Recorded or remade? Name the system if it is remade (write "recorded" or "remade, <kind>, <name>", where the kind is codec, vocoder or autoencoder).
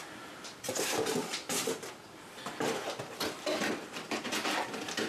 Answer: remade, vocoder, BigVGAN v2